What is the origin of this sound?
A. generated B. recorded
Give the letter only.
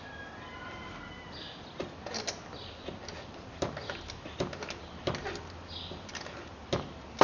B